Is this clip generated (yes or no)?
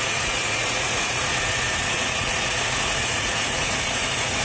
yes